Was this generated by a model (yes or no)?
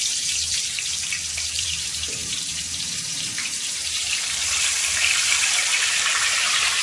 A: yes